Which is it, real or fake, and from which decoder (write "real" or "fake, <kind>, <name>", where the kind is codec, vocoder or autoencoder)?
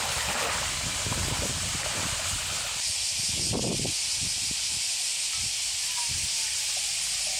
real